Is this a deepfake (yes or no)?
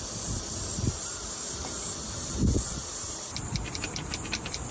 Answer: no